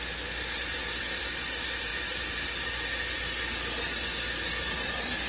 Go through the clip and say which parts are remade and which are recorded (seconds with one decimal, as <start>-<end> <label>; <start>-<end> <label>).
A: 0.0-5.3 recorded

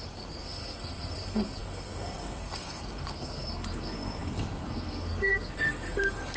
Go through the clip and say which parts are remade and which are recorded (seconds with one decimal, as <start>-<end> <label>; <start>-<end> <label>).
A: 0.0-6.4 remade

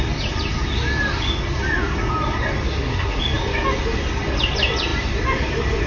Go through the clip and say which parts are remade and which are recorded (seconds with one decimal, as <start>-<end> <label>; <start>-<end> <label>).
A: 0.0-2.7 recorded; 2.7-3.2 remade; 3.2-5.9 recorded

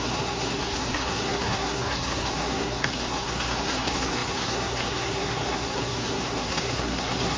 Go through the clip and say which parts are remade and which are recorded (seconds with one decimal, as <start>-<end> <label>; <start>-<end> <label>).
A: 0.0-7.4 remade

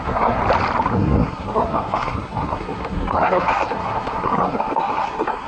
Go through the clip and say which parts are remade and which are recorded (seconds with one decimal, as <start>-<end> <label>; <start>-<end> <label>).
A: 0.0-0.4 remade; 0.4-0.9 recorded; 0.9-5.5 remade